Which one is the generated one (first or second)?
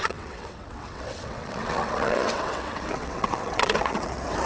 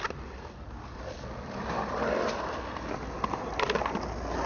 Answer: first